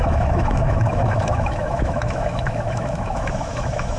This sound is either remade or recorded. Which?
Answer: remade